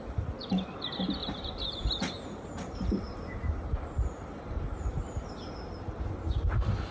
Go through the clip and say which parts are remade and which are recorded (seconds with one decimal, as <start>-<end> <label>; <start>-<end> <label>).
0.0-1.2 recorded; 1.2-5.3 remade; 5.3-6.9 recorded